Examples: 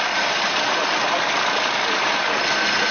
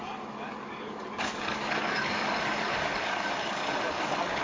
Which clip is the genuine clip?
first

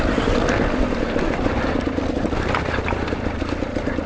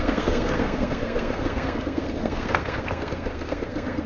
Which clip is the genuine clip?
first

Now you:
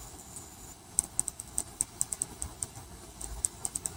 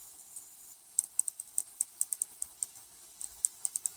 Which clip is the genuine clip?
first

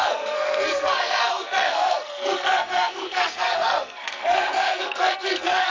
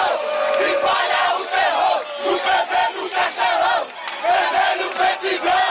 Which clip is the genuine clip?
second